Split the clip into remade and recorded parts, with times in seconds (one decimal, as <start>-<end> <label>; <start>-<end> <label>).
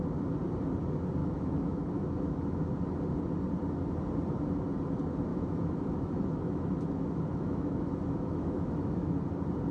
0.0-1.2 recorded; 1.2-2.6 remade; 2.6-5.3 recorded; 5.3-9.1 remade; 9.1-9.7 recorded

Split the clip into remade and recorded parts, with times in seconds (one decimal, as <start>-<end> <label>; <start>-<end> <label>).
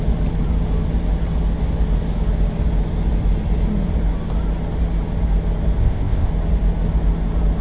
0.0-5.8 recorded; 5.8-6.3 remade; 6.3-7.6 recorded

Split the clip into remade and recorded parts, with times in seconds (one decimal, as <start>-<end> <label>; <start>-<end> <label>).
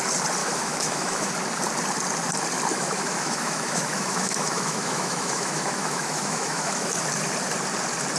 0.0-0.4 recorded; 0.4-1.3 remade; 1.3-2.7 recorded; 2.7-7.0 remade; 7.0-8.2 recorded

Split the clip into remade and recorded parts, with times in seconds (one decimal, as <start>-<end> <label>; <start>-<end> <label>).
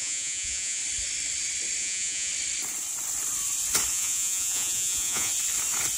0.0-0.8 remade; 0.8-1.8 recorded; 1.8-2.3 remade; 2.3-3.9 recorded; 3.9-5.3 remade; 5.3-6.0 recorded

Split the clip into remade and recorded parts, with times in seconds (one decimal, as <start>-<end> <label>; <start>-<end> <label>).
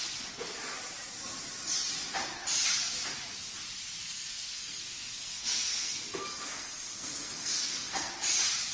0.0-4.0 recorded; 4.0-8.1 remade; 8.1-8.7 recorded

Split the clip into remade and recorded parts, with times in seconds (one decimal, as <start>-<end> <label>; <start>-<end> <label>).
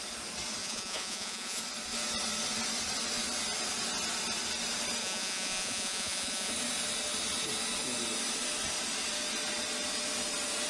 0.0-0.6 recorded; 0.6-1.6 remade; 1.6-5.0 recorded; 5.0-6.5 remade; 6.5-10.7 recorded